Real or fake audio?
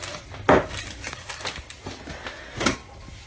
real